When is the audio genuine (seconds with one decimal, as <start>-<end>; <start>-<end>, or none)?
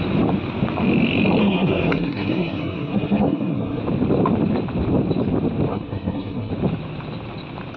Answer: 0.0-1.4; 3.8-5.7; 6.5-7.8